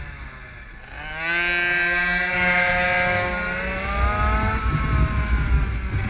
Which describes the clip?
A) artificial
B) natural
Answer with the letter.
B